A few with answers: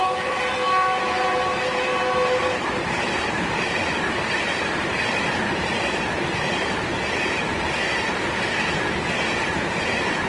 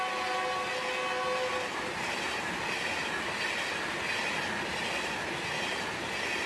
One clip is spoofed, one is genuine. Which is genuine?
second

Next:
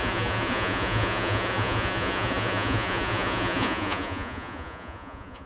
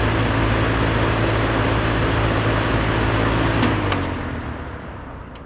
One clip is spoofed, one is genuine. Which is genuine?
second